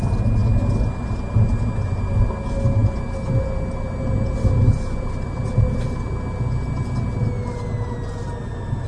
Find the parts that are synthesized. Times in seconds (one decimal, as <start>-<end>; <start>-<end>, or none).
none